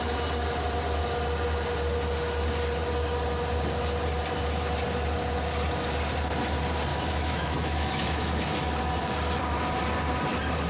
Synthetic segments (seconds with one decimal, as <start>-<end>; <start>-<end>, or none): 6.9-8.8